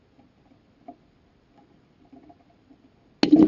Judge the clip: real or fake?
real